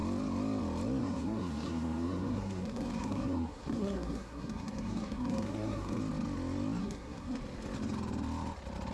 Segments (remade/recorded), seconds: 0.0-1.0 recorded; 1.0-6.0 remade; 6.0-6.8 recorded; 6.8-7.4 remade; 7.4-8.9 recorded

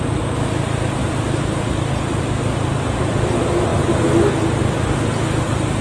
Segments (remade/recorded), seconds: 0.0-5.8 recorded

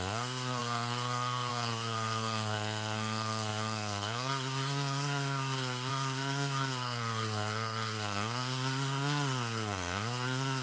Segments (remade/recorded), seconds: 0.0-10.6 remade

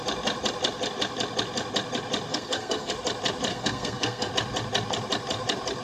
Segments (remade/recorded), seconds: 0.0-2.3 recorded; 2.3-2.9 remade; 2.9-3.5 recorded; 3.5-4.3 remade; 4.3-5.8 recorded

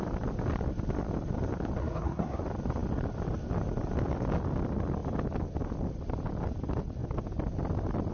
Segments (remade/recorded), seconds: 0.0-1.8 recorded; 1.8-2.4 remade; 2.4-8.1 recorded

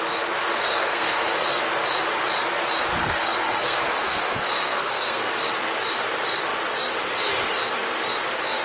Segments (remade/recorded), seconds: 0.0-0.5 recorded; 0.5-1.6 remade; 1.6-3.0 recorded; 3.0-5.3 remade; 5.3-8.6 recorded

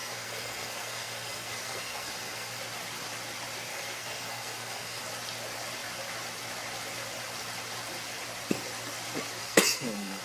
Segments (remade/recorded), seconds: 0.0-2.6 remade; 2.6-3.7 recorded; 3.7-5.0 remade; 5.0-9.4 recorded; 9.4-10.2 remade